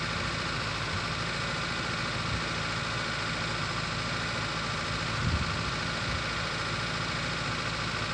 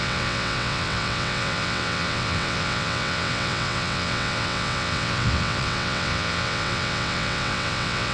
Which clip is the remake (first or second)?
second